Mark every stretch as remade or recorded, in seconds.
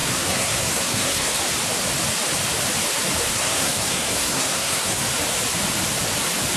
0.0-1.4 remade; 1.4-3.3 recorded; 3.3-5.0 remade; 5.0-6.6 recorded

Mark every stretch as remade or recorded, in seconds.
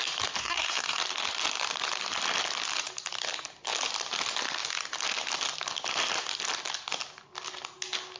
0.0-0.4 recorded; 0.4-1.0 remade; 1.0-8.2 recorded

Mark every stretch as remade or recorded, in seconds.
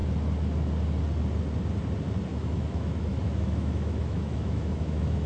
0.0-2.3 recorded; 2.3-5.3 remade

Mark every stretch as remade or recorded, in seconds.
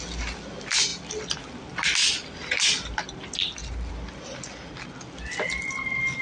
0.0-3.4 recorded; 3.4-3.9 remade; 3.9-6.2 recorded